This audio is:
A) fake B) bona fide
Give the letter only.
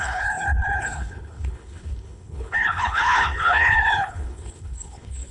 A